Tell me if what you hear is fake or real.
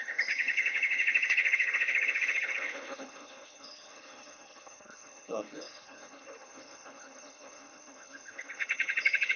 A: fake